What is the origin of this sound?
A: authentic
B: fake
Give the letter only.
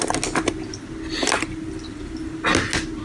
A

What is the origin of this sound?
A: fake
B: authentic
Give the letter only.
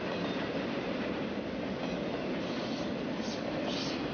B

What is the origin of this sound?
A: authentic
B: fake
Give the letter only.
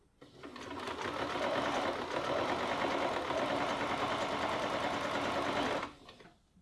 A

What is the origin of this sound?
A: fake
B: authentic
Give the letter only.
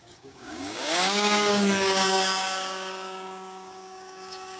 A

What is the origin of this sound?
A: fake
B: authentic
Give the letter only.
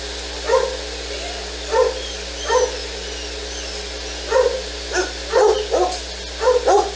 B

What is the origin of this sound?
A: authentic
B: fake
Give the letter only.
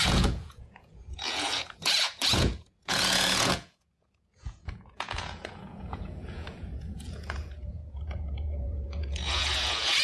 B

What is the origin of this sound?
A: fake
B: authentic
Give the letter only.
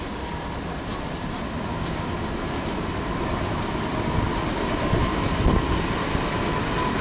B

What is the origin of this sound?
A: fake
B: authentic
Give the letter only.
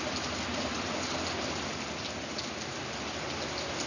B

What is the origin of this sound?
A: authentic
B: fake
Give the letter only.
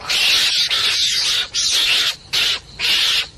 A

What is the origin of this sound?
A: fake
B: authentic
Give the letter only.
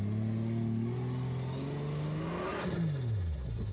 B